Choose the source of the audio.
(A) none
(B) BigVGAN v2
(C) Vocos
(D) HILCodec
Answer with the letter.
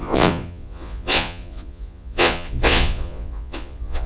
C